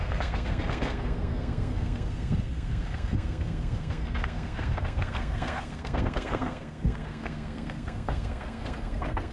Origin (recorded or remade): remade